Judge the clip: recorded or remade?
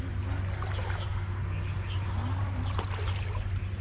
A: recorded